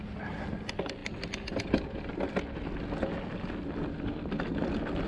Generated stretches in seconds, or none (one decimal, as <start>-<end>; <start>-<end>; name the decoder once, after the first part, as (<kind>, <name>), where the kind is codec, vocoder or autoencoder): none